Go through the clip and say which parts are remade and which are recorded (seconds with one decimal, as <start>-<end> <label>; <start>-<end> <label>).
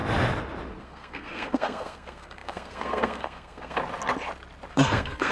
0.0-0.8 recorded; 0.8-3.8 remade; 3.8-4.7 recorded; 4.7-5.3 remade